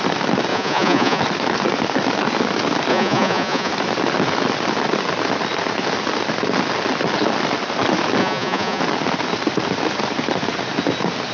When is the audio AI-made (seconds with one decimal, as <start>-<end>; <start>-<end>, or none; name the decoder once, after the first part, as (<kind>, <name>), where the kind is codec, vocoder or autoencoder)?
0.5-1.2 (vocoder, Vocos); 2.9-3.7; 8.2-8.8